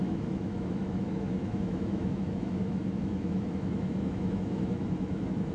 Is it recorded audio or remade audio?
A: remade